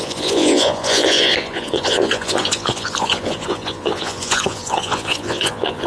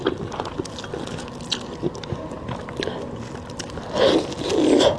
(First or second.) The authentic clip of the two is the second